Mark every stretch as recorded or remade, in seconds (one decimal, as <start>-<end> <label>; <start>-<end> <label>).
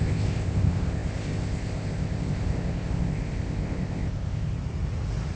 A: 0.0-4.5 remade; 4.5-5.4 recorded